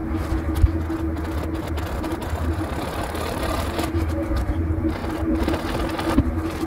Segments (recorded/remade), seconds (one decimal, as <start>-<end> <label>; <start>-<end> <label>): 0.0-1.9 recorded; 1.9-6.7 remade